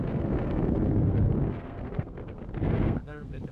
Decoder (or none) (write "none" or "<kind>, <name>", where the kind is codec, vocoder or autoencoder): codec, SNAC